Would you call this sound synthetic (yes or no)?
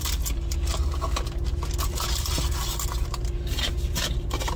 no